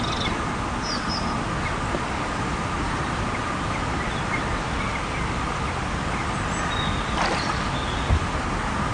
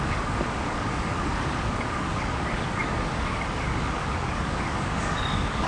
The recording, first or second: first